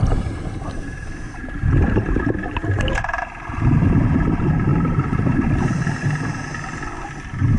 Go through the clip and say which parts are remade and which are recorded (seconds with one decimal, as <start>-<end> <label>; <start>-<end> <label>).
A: 0.0-1.0 recorded; 1.0-3.2 remade; 3.2-4.7 recorded; 4.7-5.5 remade; 5.5-7.6 recorded

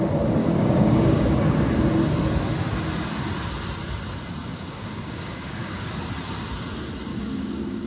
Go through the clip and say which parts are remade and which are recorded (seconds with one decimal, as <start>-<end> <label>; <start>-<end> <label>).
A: 0.0-0.4 recorded; 0.4-1.4 remade; 1.4-4.5 recorded; 4.5-5.9 remade; 5.9-7.1 recorded; 7.1-7.9 remade

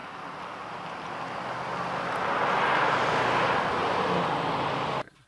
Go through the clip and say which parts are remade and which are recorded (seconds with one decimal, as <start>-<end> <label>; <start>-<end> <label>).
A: 0.0-5.3 recorded

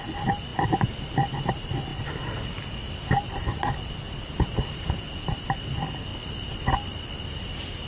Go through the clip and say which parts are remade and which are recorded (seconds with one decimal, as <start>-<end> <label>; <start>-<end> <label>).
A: 0.0-6.1 remade; 6.1-7.0 recorded; 7.0-7.9 remade

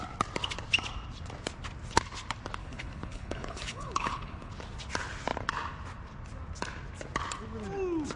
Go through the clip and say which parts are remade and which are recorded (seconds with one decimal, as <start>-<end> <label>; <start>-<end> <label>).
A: 0.0-2.6 recorded; 2.6-4.5 remade; 4.5-8.2 recorded

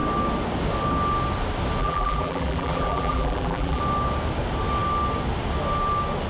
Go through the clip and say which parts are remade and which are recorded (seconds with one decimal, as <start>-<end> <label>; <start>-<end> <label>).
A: 0.0-1.8 recorded; 1.8-3.8 remade; 3.8-6.3 recorded

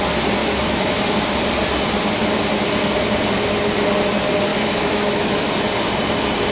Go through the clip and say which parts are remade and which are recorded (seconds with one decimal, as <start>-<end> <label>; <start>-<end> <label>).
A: 0.0-0.4 recorded; 0.4-1.0 remade; 1.0-4.5 recorded; 4.5-5.5 remade; 5.5-6.5 recorded